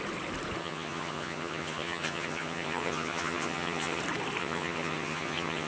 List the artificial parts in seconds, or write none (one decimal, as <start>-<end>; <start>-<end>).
0.6-4.0; 4.4-5.7